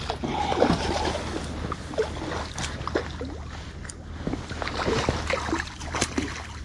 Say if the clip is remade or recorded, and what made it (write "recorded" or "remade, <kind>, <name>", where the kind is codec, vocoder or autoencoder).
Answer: recorded